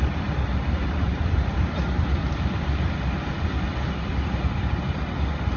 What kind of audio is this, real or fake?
real